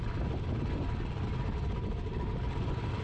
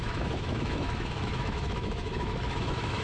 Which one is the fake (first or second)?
second